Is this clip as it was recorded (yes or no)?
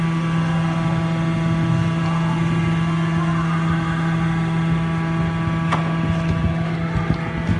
yes